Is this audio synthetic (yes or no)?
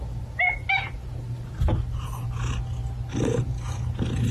no